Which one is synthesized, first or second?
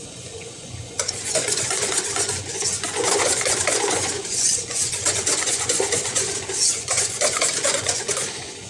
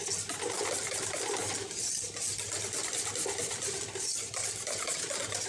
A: first